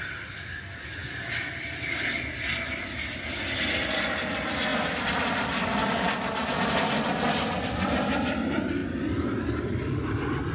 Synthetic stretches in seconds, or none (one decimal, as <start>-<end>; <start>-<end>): none